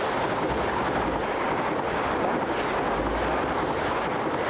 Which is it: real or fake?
real